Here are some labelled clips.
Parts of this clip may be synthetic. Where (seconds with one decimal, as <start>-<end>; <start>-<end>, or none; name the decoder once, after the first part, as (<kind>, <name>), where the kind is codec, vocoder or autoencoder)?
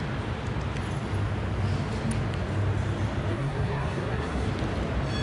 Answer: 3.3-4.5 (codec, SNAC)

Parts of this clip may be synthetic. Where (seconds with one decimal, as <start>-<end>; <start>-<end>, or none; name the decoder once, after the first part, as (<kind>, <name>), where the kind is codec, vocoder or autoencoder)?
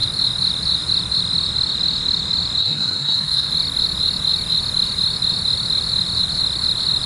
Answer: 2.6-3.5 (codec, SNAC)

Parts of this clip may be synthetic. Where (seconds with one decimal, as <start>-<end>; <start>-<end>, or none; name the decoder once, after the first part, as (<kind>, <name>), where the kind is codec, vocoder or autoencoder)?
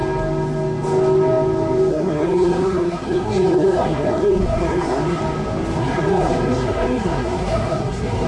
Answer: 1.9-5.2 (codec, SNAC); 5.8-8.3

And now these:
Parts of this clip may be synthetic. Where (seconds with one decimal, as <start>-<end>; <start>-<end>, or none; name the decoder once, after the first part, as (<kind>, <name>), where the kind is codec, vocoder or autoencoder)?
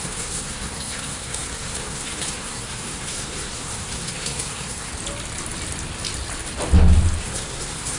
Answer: 0.0-4.9 (codec, SNAC); 7.2-8.0